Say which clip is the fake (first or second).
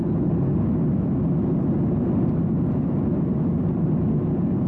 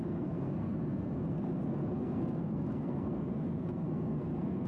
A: second